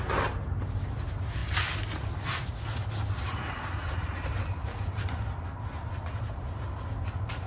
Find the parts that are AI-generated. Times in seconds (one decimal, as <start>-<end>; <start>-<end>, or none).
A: none